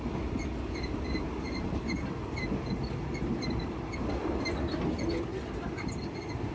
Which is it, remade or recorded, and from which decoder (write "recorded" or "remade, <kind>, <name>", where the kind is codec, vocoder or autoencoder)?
recorded